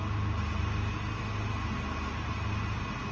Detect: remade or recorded recorded